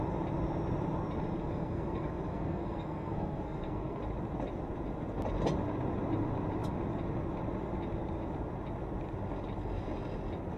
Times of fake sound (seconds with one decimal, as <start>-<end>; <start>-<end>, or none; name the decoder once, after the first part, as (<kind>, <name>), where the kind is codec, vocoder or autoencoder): 1.4-4.0 (codec, SNAC)